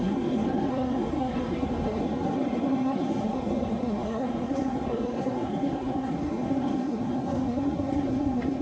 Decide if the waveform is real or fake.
fake